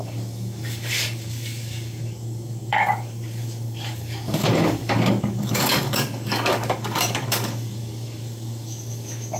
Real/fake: fake